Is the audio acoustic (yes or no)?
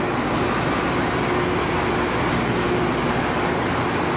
yes